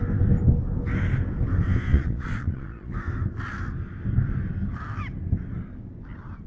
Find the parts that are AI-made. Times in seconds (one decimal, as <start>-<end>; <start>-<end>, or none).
1.9-2.9